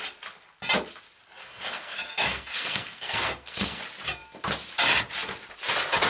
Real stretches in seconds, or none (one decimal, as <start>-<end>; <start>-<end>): 0.0-1.4; 3.8-6.1